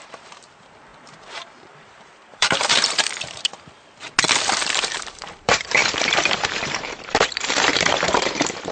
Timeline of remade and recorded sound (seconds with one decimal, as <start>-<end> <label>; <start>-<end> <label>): 0.0-3.5 remade; 3.5-4.8 recorded; 4.8-8.7 remade